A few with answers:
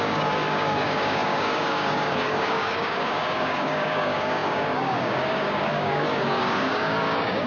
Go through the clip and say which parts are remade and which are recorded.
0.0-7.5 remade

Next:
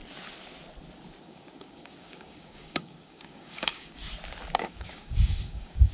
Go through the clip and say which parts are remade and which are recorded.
0.0-1.2 recorded; 1.2-4.0 remade; 4.0-4.6 recorded; 4.6-5.9 remade

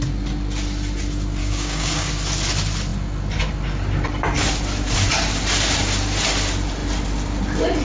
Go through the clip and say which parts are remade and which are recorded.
0.0-1.4 recorded; 1.4-2.1 remade; 2.1-7.8 recorded

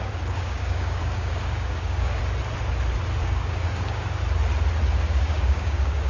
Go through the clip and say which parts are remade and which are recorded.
0.0-2.2 remade; 2.2-3.2 recorded; 3.2-4.2 remade; 4.2-5.0 recorded; 5.0-6.1 remade

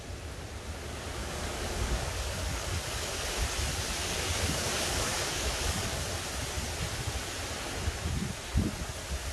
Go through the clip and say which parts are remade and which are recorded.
0.0-1.2 recorded; 1.2-3.3 remade; 3.3-4.0 recorded; 4.0-6.0 remade; 6.0-9.3 recorded

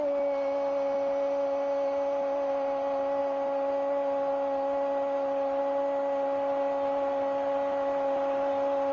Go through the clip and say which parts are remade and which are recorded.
0.0-8.9 recorded

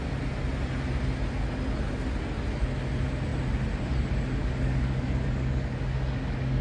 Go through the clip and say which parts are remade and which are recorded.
0.0-4.4 recorded; 4.4-6.6 remade

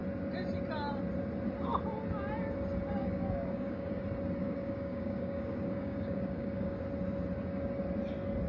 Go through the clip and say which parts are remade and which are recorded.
0.0-3.0 recorded; 3.0-4.0 remade; 4.0-4.4 recorded; 4.4-6.8 remade; 6.8-8.5 recorded